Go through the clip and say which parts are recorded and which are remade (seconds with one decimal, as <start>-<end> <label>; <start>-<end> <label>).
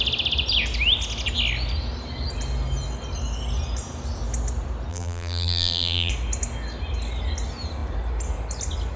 0.0-4.9 recorded; 4.9-6.1 remade; 6.1-9.0 recorded